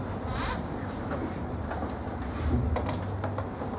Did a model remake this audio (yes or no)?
no